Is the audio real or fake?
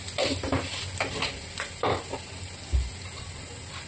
real